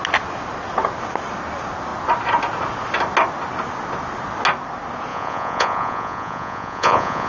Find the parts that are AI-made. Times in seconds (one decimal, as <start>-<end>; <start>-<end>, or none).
5.1-7.3